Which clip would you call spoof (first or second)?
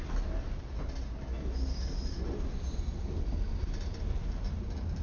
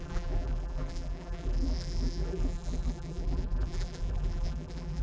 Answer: second